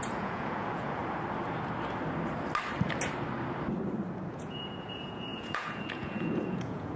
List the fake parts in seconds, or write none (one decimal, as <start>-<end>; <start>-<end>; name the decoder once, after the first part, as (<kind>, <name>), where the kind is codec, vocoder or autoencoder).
0.0-1.0 (vocoder, Vocos); 4.3-7.0